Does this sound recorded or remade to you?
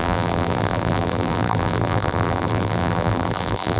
remade